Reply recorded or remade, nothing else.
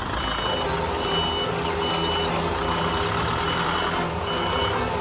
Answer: recorded